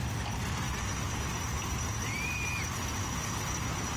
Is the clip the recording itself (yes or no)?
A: yes